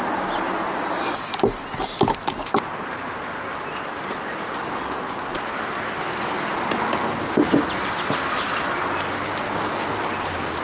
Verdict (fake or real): real